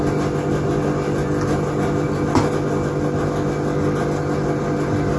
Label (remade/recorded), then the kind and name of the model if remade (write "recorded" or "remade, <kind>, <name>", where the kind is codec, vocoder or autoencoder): recorded